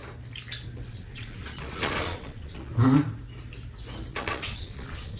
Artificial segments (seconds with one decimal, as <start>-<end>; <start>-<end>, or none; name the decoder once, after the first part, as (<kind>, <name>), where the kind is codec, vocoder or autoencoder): 0.9-2.7 (vocoder, Vocos); 4.1-5.2